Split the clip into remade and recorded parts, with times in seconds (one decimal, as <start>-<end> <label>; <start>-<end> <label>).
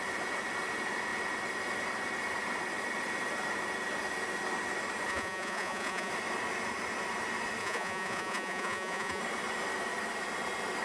0.0-5.1 recorded; 5.1-6.1 remade; 6.1-7.6 recorded; 7.6-9.2 remade; 9.2-10.8 recorded